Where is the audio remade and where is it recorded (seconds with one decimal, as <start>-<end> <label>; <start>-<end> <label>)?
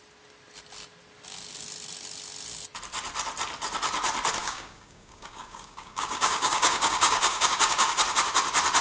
0.0-4.4 recorded; 4.4-8.0 remade; 8.0-8.8 recorded